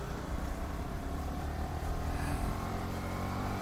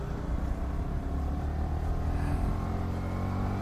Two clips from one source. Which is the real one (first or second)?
second